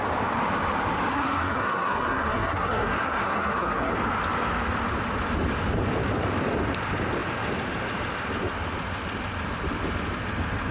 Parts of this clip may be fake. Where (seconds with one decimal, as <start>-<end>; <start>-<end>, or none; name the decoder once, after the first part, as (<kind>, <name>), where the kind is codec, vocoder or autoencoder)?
1.1-3.9 (codec, SNAC)